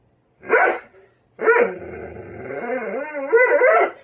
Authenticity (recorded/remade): recorded